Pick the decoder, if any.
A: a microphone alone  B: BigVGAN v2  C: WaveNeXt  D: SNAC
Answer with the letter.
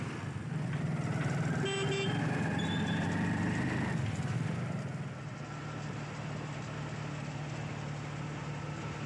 A